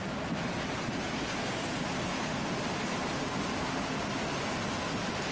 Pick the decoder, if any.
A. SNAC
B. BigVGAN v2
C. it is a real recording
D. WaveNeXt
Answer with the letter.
C